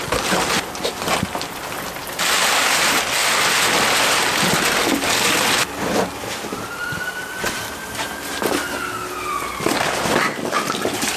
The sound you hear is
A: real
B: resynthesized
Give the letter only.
A